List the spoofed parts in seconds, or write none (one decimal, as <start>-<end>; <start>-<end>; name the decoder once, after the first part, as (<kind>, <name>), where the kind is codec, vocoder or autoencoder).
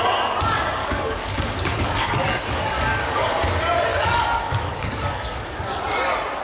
0.8-3.3 (codec, DAC); 3.9-5.8